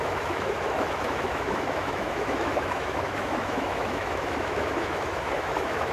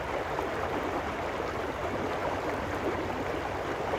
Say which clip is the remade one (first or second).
first